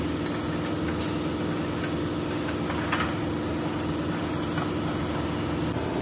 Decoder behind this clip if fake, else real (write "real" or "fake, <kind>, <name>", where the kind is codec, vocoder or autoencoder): real